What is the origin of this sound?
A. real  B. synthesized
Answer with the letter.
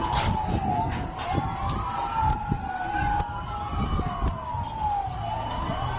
A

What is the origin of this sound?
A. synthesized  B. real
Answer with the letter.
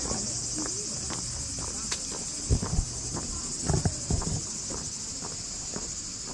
B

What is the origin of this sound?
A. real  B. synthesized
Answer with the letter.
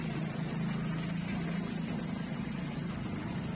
A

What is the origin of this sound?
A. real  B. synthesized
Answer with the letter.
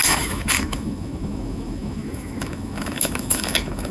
B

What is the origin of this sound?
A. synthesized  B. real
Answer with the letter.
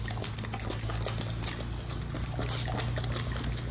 B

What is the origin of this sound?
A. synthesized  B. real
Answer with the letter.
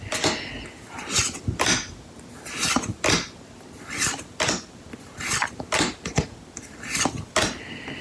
B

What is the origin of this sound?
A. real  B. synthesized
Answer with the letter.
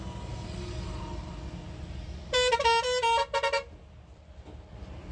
A